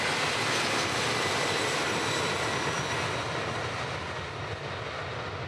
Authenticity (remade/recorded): recorded